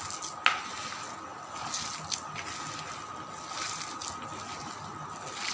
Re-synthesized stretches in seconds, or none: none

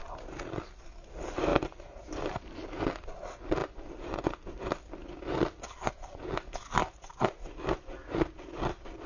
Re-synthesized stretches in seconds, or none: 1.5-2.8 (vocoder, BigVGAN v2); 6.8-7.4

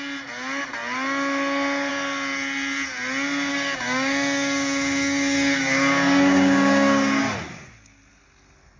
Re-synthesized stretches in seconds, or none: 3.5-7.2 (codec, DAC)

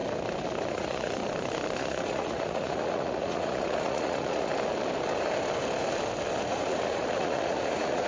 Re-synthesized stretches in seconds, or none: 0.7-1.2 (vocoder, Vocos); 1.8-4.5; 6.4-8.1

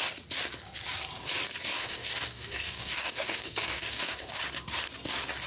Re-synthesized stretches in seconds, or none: 1.7-4.4 (codec, DAC)

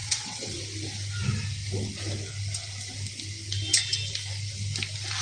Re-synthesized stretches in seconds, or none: 0.0-0.6 (vocoder, WaveNeXt)

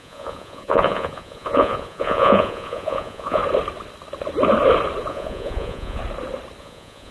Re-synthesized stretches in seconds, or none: 0.0-3.4 (vocoder, Vocos); 5.1-6.0; 6.6-7.1